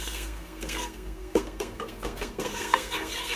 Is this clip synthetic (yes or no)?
yes